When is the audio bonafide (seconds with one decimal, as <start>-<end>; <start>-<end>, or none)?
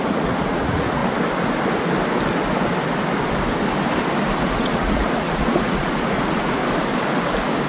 1.0-4.4; 6.6-7.7